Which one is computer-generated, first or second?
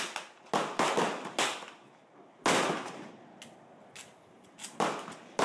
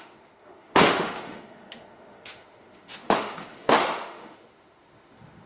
second